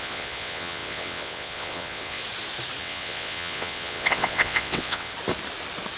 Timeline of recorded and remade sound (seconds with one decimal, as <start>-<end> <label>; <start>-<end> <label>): 0.0-2.2 remade; 2.2-2.8 recorded; 2.8-5.1 remade; 5.1-6.0 recorded